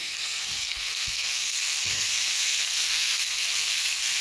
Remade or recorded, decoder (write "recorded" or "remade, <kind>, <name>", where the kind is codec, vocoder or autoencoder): remade, codec, SNAC